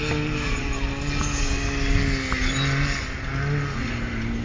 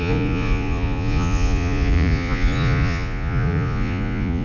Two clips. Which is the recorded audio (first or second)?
first